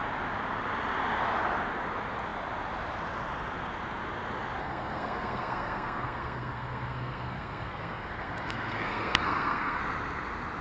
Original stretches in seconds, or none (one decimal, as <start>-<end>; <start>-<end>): 0.0-4.6; 9.8-10.6